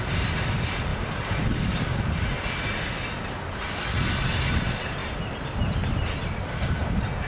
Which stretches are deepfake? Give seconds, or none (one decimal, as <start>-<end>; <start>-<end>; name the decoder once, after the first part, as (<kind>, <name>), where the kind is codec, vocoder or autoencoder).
0.9-1.5 (vocoder, BigVGAN v2)